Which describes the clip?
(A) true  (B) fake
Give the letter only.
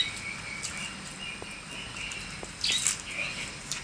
A